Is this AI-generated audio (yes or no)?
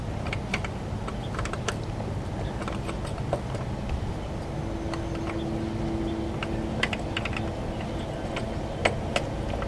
no